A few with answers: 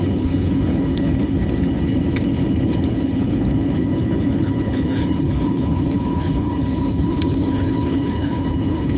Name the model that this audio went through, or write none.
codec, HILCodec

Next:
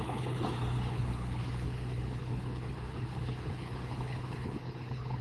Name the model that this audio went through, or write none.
codec, HILCodec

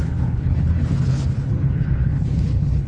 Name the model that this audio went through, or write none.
codec, HILCodec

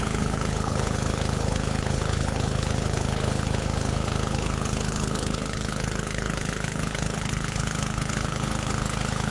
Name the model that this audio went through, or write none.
codec, HILCodec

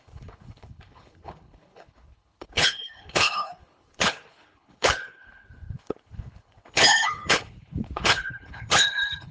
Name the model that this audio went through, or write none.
codec, HILCodec